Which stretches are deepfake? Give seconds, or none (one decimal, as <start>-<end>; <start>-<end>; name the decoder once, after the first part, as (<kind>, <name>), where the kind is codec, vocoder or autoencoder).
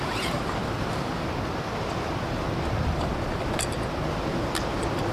none